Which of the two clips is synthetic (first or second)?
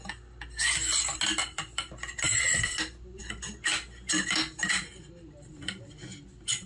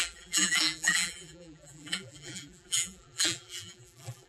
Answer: second